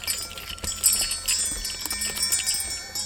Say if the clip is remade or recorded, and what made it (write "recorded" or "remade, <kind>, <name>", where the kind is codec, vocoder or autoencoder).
recorded